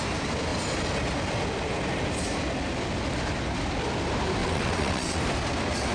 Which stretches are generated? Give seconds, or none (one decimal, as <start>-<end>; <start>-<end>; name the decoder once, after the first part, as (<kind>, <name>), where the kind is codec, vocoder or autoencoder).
4.4-5.2 (vocoder, WaveNeXt)